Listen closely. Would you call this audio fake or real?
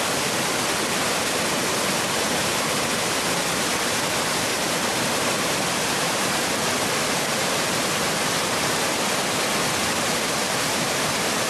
real